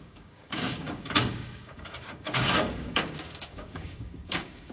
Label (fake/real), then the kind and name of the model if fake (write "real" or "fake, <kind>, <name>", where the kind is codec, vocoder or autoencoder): fake, codec, DAC